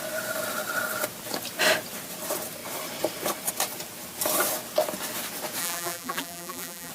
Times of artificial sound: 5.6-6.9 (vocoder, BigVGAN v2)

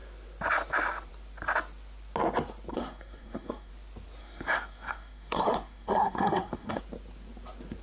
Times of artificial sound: 2.7-3.7 (codec, SNAC); 4.2-6.8

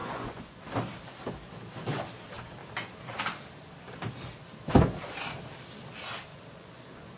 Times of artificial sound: 0.0-0.6 (vocoder, Vocos); 6.3-7.2

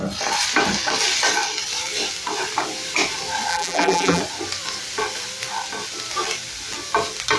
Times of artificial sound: 3.5-4.2 (vocoder, BigVGAN v2)

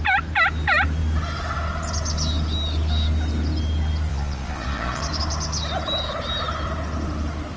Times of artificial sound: 4.1-5.0 (vocoder, Vocos)

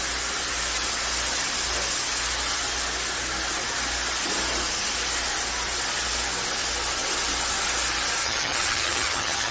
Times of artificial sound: 8.2-9.5 (vocoder, HiFi-GAN)